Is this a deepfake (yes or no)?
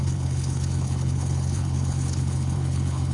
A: yes